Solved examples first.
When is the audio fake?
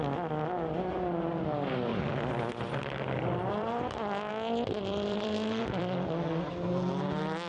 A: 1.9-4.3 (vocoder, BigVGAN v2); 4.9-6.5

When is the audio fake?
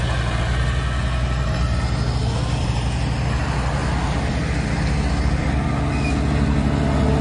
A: 2.2-3.4 (vocoder, BigVGAN v2); 3.8-4.3; 5.4-5.9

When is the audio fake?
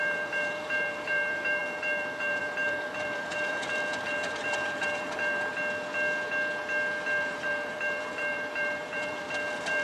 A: 0.0-5.5 (vocoder, BigVGAN v2); 7.2-9.8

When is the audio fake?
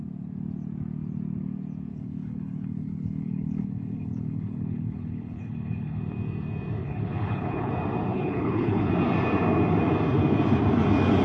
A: 1.9-6.0 (codec, HILCodec); 6.8-7.7; 8.1-8.9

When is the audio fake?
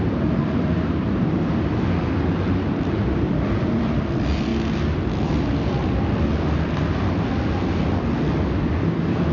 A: 0.0-4.5 (vocoder, BigVGAN v2); 8.5-9.3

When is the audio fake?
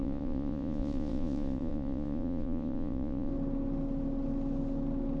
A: 0.0-3.3 (vocoder, Vocos)